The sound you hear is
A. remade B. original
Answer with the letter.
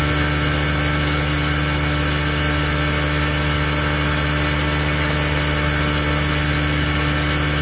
B